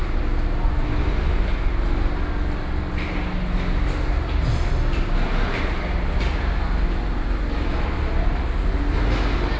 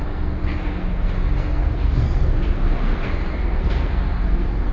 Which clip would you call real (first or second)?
first